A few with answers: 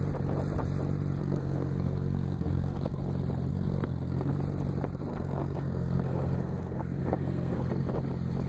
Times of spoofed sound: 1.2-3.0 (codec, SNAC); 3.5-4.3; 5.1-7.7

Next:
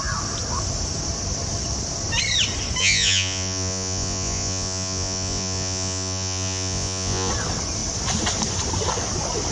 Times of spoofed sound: 2.8-7.3 (vocoder, Vocos)